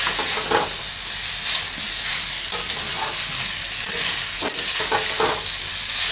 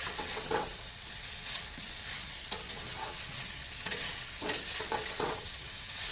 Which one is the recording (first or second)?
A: first